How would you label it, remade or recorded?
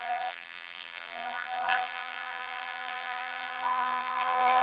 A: remade